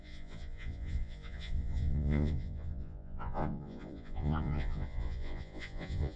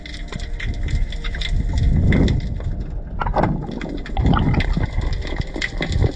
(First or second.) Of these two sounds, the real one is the second